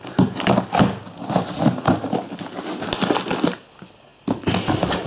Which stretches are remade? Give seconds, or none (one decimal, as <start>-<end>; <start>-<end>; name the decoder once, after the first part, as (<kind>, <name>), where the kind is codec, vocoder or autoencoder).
none